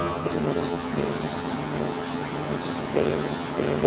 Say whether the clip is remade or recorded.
remade